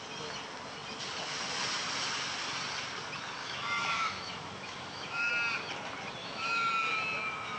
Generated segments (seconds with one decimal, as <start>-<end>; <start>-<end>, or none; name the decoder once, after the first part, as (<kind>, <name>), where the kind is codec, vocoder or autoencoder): 3.4-5.3 (autoencoder, DAC-VAE); 6.2-7.6